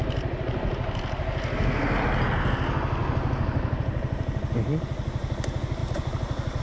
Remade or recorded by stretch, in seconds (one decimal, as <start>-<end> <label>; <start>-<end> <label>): 0.0-6.6 recorded